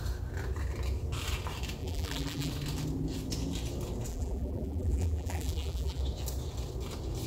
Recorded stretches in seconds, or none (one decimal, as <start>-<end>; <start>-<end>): 0.0-1.8; 2.5-4.1; 6.0-7.3